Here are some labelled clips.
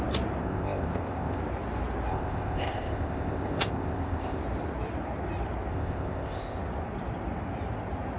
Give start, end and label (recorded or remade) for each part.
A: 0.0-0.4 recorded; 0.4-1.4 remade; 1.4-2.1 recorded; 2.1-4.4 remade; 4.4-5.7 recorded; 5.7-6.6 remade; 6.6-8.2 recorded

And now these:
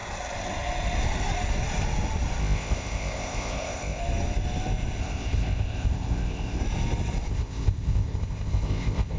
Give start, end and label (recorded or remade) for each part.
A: 0.0-2.4 recorded; 2.4-4.0 remade; 4.0-5.0 recorded; 5.0-6.6 remade; 6.6-7.3 recorded; 7.3-9.2 remade

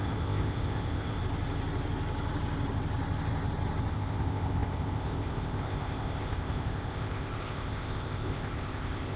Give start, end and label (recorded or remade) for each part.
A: 0.0-1.2 remade; 1.2-3.9 recorded; 3.9-9.2 remade

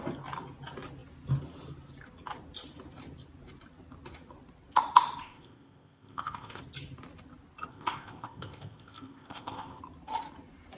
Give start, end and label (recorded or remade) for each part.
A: 0.0-5.2 recorded; 5.2-6.6 remade; 6.6-7.7 recorded; 7.7-9.8 remade; 9.8-10.8 recorded

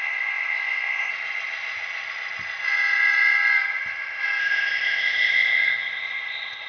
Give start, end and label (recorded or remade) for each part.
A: 0.0-1.1 remade; 1.1-4.4 recorded; 4.4-6.7 remade